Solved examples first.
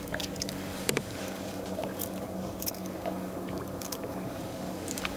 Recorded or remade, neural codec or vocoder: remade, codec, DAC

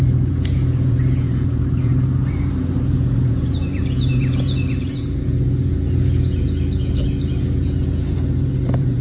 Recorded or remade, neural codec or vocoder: remade, vocoder, Vocos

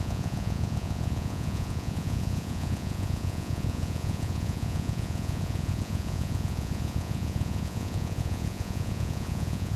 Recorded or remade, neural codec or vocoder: remade, vocoder, Vocos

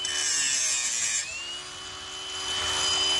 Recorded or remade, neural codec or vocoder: recorded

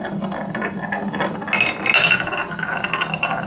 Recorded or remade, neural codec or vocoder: recorded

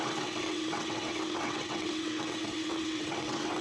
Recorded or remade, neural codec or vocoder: remade, vocoder, WaveNeXt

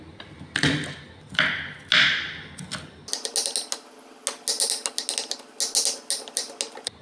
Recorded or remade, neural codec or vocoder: recorded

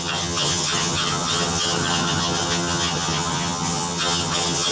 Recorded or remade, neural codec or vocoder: remade, vocoder, HiFi-GAN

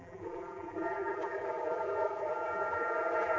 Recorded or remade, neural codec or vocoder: remade, vocoder, BigVGAN v2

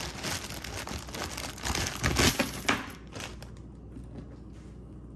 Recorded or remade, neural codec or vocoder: recorded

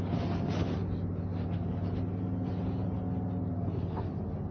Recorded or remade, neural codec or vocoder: recorded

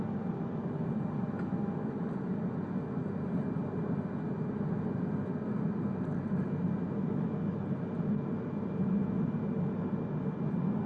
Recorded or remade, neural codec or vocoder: recorded